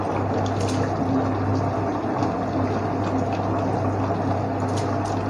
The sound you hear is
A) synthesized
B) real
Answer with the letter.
B